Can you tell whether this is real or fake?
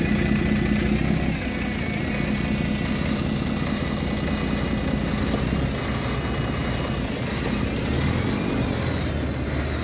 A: real